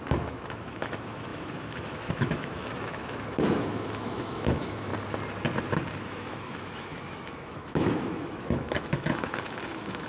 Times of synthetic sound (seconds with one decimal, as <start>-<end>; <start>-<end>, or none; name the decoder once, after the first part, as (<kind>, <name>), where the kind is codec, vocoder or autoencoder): 0.0-4.9 (autoencoder, DAC-VAE); 6.0-10.1